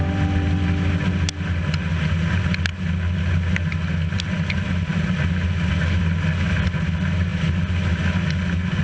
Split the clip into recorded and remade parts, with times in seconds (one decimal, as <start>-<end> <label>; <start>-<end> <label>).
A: 0.0-8.8 recorded